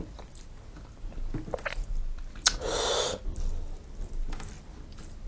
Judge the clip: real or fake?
real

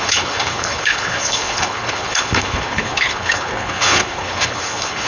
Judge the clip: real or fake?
fake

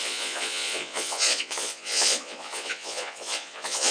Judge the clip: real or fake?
fake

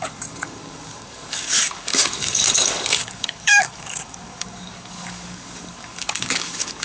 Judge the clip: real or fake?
fake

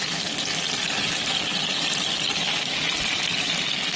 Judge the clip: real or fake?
real